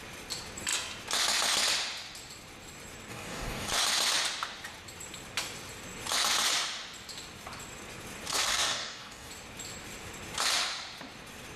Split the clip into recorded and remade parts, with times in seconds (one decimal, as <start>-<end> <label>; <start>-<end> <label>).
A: 0.0-3.1 recorded; 3.1-3.7 remade; 3.7-8.3 recorded; 8.3-9.3 remade; 9.3-11.6 recorded